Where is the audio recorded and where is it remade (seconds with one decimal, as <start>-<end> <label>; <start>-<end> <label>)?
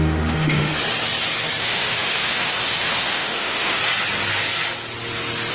0.0-0.7 remade; 0.7-1.6 recorded; 1.6-3.8 remade; 3.8-5.5 recorded